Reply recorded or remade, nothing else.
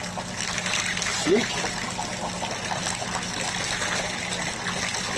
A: recorded